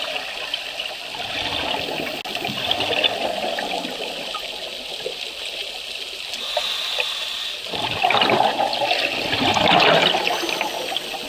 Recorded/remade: recorded